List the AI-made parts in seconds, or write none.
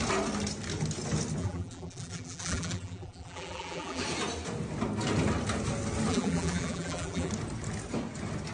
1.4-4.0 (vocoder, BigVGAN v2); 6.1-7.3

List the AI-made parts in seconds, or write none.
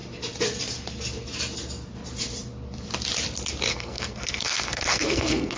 3.7-5.6 (codec, SNAC)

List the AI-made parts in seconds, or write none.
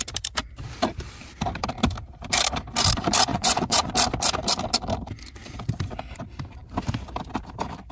3.3-3.9 (vocoder, Vocos)